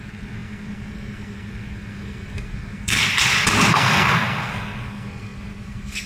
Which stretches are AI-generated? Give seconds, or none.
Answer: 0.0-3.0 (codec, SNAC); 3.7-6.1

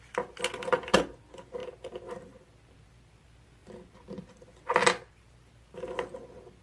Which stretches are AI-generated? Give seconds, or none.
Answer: none

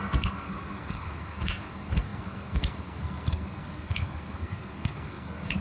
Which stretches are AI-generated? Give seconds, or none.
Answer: 0.0-5.6 (codec, SNAC)